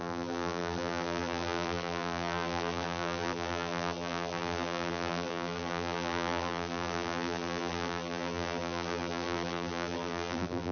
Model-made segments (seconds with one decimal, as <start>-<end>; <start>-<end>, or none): 0.0-10.7